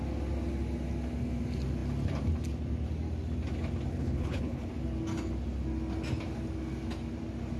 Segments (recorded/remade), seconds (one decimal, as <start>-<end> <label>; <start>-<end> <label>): 0.0-3.9 recorded; 3.9-4.7 remade; 4.7-7.6 recorded